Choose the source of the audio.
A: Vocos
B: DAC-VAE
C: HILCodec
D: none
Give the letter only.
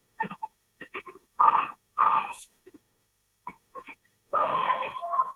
B